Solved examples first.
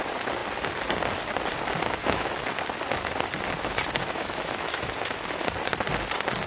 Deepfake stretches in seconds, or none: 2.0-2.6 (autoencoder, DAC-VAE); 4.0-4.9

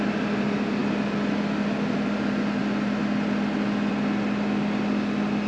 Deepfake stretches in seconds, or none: none

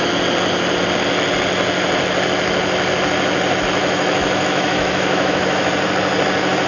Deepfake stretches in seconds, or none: 3.8-5.7 (autoencoder, DAC-VAE)

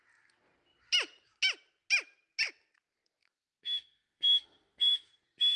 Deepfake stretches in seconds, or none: 3.2-5.1 (autoencoder, DAC-VAE)

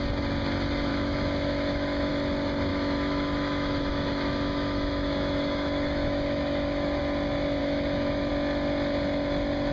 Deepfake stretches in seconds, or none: 0.9-2.1 (autoencoder, DAC-VAE); 2.7-7.0; 7.6-8.3

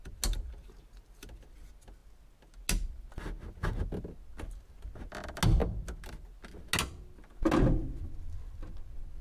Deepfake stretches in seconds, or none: none

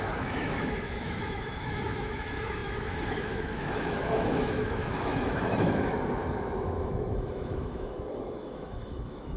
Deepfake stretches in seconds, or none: 0.0-9.4 (autoencoder, DAC-VAE)